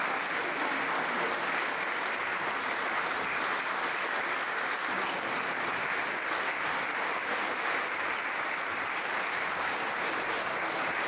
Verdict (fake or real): real